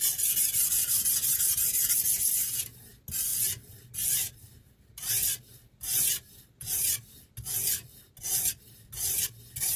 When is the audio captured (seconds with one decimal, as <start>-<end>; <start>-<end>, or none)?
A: 0.0-9.8